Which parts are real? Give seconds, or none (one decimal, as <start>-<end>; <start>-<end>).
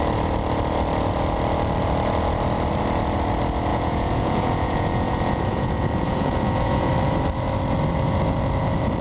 0.0-3.7; 6.9-9.0